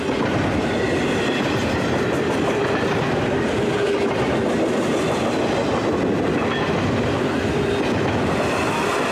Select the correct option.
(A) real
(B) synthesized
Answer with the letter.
A